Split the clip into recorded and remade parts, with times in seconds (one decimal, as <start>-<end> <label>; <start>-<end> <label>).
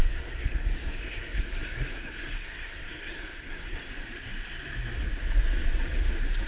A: 0.0-3.9 remade; 3.9-6.5 recorded